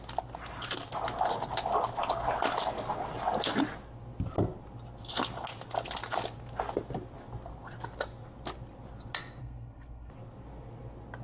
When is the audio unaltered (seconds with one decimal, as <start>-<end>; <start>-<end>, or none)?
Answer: 0.0-9.4; 10.1-11.2